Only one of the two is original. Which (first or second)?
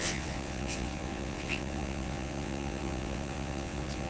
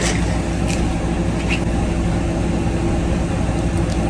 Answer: second